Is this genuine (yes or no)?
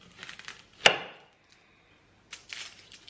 yes